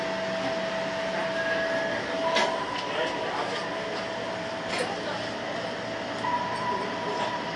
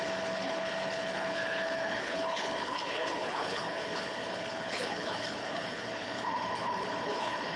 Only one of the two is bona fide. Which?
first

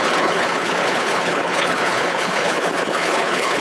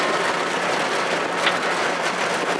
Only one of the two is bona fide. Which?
second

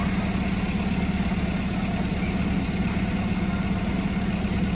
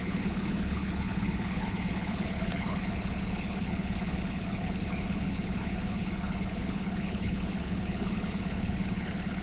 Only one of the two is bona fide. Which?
first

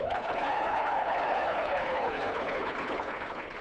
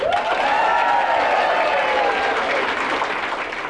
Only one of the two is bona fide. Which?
second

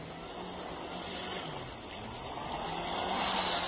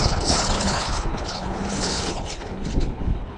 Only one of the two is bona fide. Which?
first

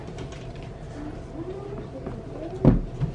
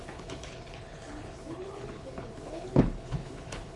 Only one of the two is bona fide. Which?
first